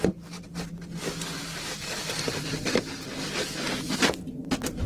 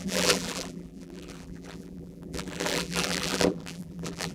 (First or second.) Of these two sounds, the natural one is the first